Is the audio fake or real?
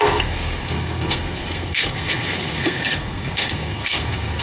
fake